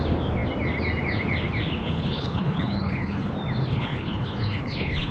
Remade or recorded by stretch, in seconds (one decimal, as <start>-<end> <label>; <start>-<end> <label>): 0.0-1.8 recorded; 1.8-3.3 remade; 3.3-3.7 recorded; 3.7-5.1 remade